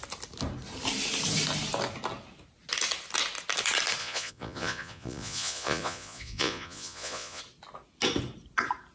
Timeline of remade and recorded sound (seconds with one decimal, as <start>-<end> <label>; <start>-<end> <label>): 0.0-4.0 recorded; 4.0-7.4 remade; 7.4-8.9 recorded